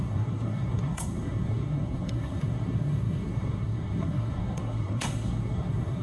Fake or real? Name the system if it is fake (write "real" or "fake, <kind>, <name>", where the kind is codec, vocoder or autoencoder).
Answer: fake, codec, SNAC